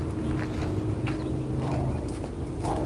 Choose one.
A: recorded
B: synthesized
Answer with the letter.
A